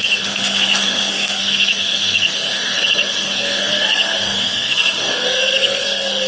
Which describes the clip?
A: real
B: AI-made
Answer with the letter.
B